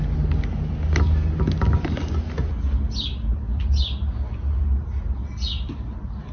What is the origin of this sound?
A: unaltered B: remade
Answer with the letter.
A